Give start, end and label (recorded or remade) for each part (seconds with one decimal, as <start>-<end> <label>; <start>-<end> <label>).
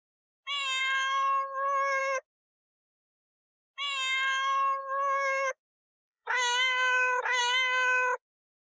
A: 0.0-2.0 recorded; 2.0-2.6 remade; 2.6-4.8 recorded; 4.8-7.4 remade; 7.4-8.7 recorded